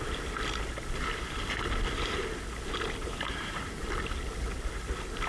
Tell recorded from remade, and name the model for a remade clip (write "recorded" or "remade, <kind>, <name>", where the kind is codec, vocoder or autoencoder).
recorded